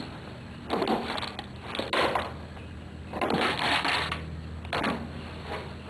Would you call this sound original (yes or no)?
yes